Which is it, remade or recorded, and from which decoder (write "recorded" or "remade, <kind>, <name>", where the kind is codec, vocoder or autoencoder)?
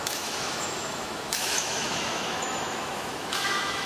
remade, autoencoder, DAC-VAE